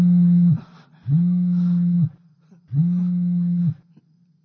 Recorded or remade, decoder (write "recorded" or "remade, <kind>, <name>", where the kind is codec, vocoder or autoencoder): recorded